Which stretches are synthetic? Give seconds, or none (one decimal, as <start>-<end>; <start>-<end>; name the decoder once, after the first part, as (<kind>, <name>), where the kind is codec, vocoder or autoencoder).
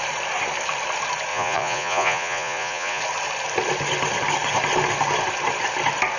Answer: 1.3-3.0 (vocoder, Vocos)